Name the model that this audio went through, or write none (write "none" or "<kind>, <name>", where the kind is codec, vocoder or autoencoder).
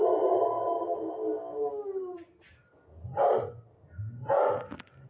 none